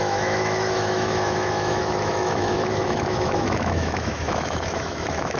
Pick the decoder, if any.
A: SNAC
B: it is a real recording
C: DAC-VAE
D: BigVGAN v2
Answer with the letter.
C